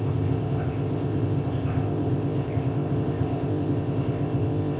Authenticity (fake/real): fake